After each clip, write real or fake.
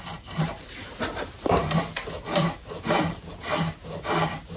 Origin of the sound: fake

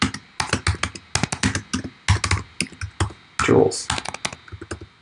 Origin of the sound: real